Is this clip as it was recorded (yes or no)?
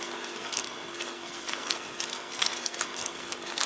no